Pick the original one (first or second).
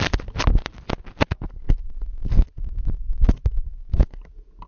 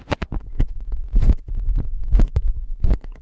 first